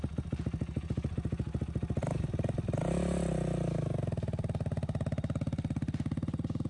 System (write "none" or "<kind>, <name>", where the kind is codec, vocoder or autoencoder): none